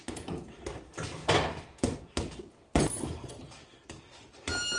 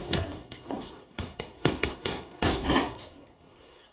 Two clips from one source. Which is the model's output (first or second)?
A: second